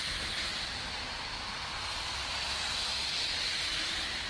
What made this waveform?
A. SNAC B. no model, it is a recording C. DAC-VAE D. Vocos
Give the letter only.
B